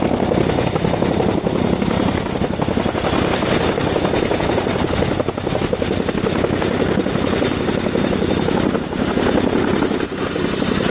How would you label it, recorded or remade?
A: recorded